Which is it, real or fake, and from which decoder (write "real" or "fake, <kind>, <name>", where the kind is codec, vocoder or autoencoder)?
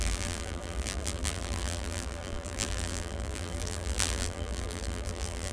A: fake, vocoder, BigVGAN v2